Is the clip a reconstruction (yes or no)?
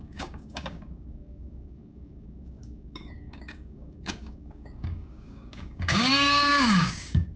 yes